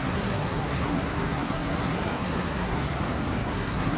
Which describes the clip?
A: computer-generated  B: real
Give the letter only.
A